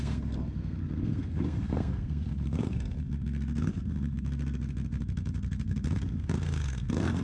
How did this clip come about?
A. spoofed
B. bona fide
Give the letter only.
A